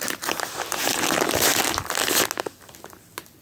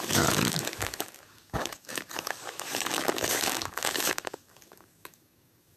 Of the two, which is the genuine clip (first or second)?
first